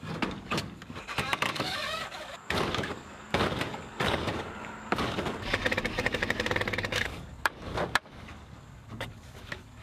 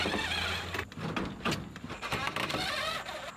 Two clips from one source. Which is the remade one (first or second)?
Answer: first